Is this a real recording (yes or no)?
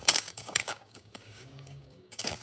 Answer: no